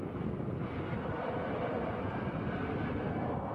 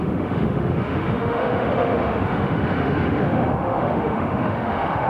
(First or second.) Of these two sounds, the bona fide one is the first